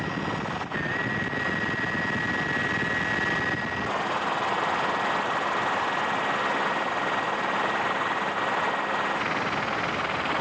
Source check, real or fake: real